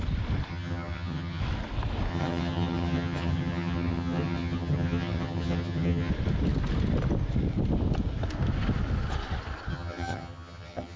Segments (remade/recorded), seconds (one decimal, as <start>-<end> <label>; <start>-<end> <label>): 0.0-0.5 recorded; 0.5-1.4 remade; 1.4-2.1 recorded; 2.1-6.1 remade; 6.1-9.7 recorded; 9.7-11.0 remade